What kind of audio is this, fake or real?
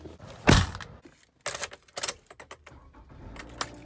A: real